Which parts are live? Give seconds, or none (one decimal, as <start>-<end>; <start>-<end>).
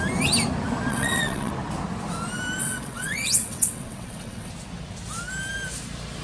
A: 0.0-0.9; 1.5-2.6; 4.5-6.2